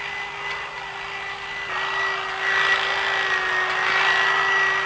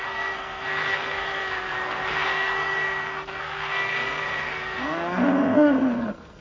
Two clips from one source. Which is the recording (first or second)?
first